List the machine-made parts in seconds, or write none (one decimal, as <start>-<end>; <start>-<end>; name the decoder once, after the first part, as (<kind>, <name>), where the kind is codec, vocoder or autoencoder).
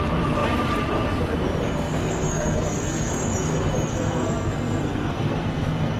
2.0-3.1 (codec, SNAC); 3.9-6.0